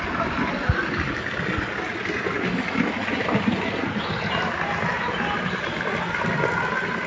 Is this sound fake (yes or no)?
no